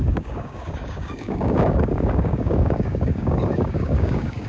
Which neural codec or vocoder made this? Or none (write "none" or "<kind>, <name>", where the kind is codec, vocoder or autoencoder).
codec, DAC